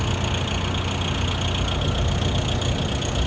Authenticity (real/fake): real